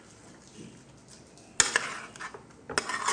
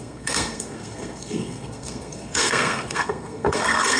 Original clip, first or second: first